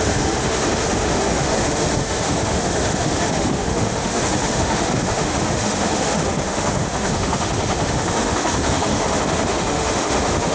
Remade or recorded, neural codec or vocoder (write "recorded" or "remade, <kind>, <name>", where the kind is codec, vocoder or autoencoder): remade, autoencoder, DAC-VAE